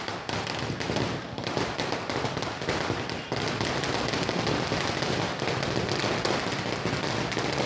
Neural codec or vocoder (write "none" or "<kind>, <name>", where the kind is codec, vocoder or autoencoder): none